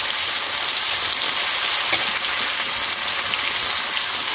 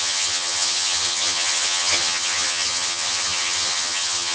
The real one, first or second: first